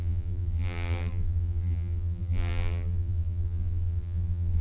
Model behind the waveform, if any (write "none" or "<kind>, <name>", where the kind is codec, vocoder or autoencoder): vocoder, BigVGAN v2